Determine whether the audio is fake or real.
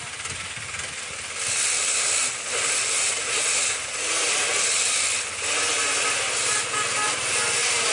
real